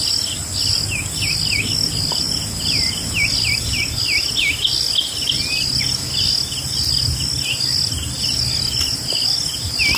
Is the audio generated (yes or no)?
no